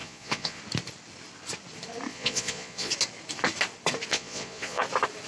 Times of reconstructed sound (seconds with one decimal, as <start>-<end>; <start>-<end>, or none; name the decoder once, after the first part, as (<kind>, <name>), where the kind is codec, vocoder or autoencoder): 0.0-0.6 (vocoder, Vocos); 2.1-2.9; 4.1-4.8